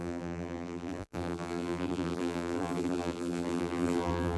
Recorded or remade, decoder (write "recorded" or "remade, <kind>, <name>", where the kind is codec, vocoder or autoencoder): remade, vocoder, BigVGAN v2